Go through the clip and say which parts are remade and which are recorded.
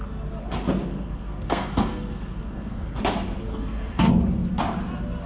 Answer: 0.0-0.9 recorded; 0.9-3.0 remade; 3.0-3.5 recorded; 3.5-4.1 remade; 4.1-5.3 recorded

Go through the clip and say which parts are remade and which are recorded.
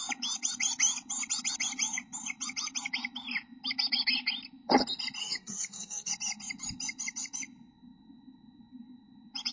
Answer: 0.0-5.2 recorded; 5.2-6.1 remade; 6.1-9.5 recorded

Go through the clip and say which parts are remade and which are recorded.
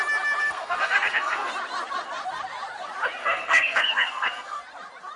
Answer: 0.0-0.4 recorded; 0.4-1.5 remade; 1.5-3.2 recorded; 3.2-4.6 remade; 4.6-5.2 recorded